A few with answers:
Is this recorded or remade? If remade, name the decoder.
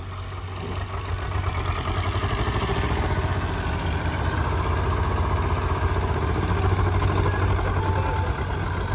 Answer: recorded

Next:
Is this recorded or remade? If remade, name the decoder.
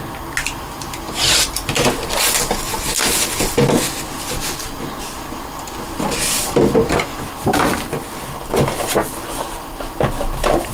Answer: recorded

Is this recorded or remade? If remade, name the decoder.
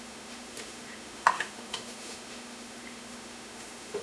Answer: remade, autoencoder, DAC-VAE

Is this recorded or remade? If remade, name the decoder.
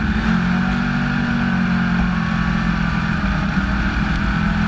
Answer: recorded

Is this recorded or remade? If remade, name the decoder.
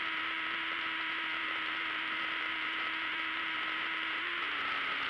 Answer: remade, vocoder, BigVGAN v2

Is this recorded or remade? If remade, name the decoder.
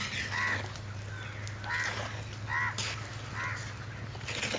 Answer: recorded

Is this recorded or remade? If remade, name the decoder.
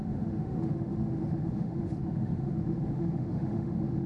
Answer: remade, autoencoder, DAC-VAE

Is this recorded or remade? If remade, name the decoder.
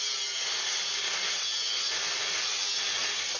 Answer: recorded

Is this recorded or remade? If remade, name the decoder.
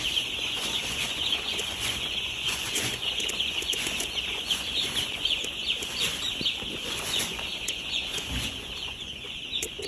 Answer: remade, vocoder, Vocos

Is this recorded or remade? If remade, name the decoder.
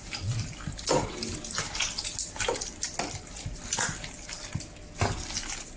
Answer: recorded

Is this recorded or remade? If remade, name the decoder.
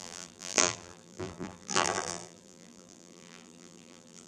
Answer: remade, vocoder, BigVGAN v2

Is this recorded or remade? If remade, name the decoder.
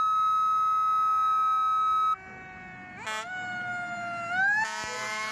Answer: recorded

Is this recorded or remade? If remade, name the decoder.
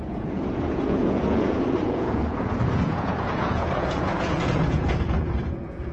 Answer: remade, vocoder, Vocos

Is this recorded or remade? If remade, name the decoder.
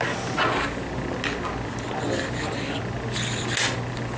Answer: recorded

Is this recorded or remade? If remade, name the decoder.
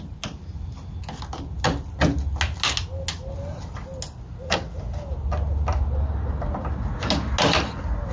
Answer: recorded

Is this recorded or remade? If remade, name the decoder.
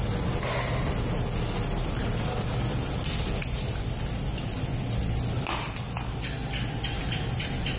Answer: recorded